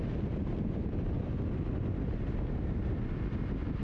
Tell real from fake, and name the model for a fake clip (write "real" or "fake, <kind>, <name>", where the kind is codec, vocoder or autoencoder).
real